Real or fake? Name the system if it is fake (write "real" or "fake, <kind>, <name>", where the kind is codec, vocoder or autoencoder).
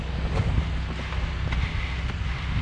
real